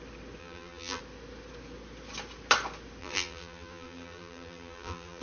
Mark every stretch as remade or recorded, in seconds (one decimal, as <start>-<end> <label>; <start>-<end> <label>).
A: 0.0-0.4 recorded; 0.4-1.0 remade; 1.0-3.0 recorded; 3.0-5.2 remade